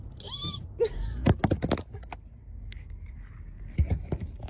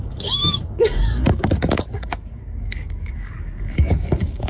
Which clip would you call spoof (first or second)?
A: second